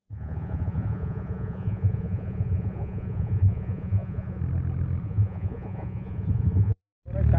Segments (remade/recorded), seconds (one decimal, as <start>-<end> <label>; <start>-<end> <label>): 0.0-4.4 remade; 4.4-5.0 recorded; 5.0-6.8 remade; 6.8-7.4 recorded